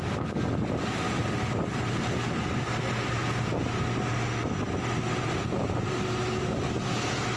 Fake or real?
real